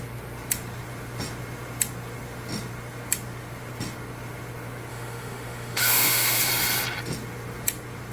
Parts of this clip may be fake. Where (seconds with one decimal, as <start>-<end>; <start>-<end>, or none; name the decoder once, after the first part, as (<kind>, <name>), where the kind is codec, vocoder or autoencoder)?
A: 4.9-6.5 (autoencoder, DAC-VAE)

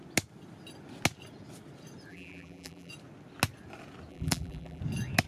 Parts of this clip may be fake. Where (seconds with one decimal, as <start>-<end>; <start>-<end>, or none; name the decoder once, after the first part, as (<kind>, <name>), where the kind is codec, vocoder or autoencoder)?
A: 2.1-2.9 (vocoder, BigVGAN v2); 4.1-4.8

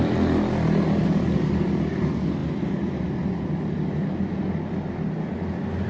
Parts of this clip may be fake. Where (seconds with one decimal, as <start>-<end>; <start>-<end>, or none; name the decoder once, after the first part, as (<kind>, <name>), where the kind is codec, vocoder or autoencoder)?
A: none

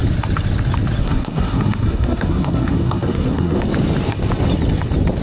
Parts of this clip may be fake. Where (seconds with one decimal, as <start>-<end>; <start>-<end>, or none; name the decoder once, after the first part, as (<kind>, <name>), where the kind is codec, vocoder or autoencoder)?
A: 1.0-3.6 (codec, SNAC)